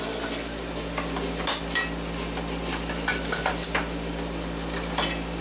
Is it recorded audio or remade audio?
recorded